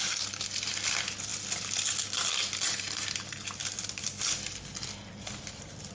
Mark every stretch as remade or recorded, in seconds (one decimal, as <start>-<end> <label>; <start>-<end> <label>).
0.0-5.9 recorded